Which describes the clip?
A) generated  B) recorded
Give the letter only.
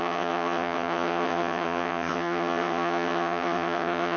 A